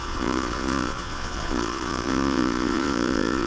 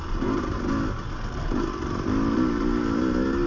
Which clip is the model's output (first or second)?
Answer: first